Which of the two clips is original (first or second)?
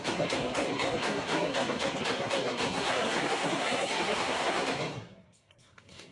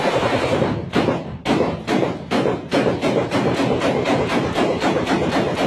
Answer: second